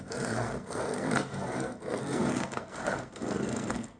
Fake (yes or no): yes